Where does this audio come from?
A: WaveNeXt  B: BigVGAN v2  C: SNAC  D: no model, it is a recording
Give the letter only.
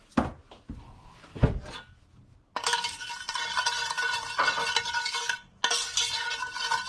D